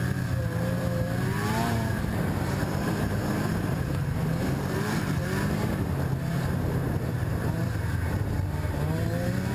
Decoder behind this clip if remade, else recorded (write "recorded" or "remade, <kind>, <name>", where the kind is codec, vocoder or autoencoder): remade, vocoder, BigVGAN v2